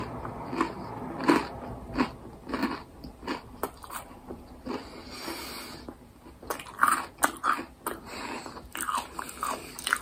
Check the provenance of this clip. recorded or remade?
recorded